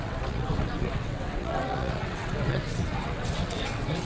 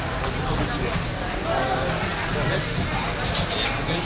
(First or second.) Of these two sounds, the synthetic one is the first